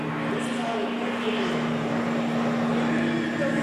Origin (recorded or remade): recorded